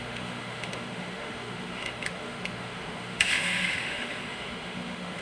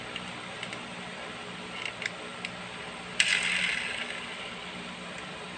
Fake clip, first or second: first